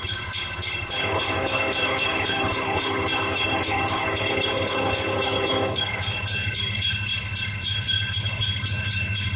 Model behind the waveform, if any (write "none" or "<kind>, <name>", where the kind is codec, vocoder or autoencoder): codec, HILCodec